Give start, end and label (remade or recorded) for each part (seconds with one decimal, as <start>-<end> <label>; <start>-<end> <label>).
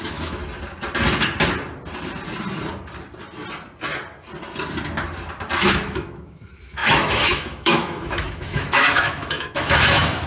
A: 0.0-0.4 remade; 0.4-5.6 recorded; 5.6-10.3 remade